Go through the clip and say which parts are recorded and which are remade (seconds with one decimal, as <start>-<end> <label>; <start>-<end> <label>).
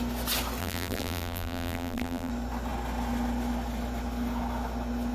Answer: 0.0-0.6 recorded; 0.6-2.3 remade; 2.3-5.1 recorded